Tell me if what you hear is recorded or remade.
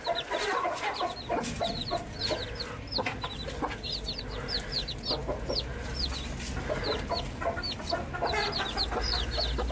recorded